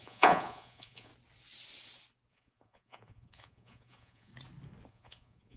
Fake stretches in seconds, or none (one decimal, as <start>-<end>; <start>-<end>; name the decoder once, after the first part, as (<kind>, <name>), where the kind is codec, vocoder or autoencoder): 0.0-1.1 (vocoder, Vocos); 2.3-4.3; 4.9-5.6